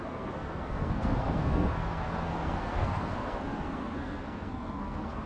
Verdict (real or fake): fake